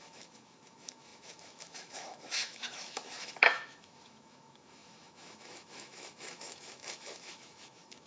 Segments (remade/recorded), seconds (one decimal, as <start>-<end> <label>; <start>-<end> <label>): 0.0-8.1 remade